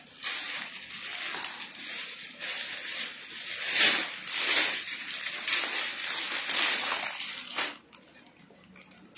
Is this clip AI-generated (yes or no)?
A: yes